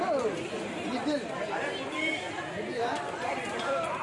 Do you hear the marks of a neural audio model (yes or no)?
yes